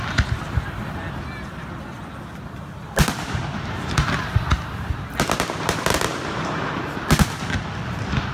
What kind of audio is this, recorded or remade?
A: recorded